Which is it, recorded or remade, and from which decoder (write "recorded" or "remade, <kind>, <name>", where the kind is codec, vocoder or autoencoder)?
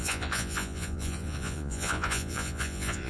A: remade, vocoder, Vocos